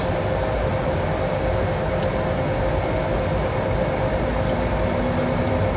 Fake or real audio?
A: real